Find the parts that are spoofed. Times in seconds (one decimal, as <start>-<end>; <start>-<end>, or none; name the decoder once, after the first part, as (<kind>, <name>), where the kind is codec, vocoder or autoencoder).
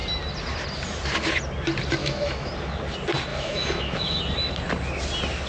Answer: 2.0-2.5 (autoencoder, DAC-VAE); 3.3-4.2